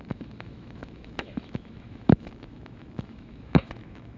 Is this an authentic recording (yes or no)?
no